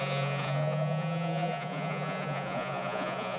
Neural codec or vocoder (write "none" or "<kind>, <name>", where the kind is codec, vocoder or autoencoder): vocoder, Vocos